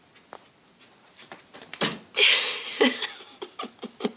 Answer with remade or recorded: recorded